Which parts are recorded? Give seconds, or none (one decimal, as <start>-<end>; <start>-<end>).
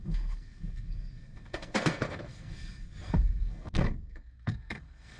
none